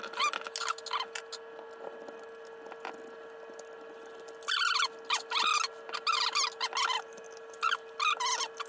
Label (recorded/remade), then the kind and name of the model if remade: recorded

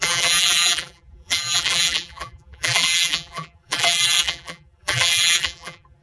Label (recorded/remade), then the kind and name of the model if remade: remade, vocoder, BigVGAN v2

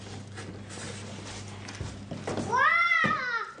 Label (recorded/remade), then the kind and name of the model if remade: recorded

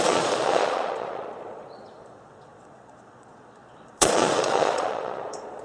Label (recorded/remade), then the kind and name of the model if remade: remade, vocoder, Vocos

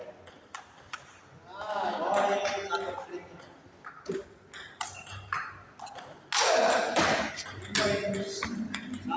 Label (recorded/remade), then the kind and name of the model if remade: recorded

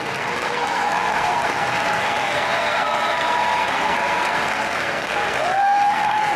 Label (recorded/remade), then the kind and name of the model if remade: remade, codec, SNAC